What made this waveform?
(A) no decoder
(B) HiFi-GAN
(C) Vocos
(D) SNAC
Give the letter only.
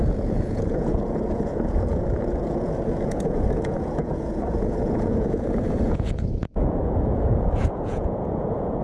C